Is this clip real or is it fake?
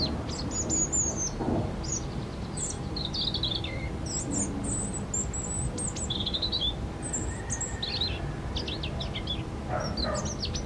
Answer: real